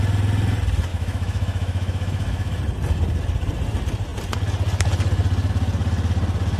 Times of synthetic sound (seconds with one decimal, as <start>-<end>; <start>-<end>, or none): 0.9-2.6